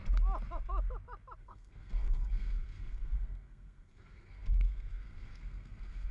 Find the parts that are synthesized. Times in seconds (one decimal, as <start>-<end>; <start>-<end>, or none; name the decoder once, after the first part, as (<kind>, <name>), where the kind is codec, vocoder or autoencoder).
1.4-6.1 (codec, SNAC)